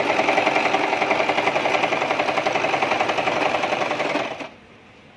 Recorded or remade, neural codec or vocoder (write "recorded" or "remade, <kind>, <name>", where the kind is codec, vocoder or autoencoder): recorded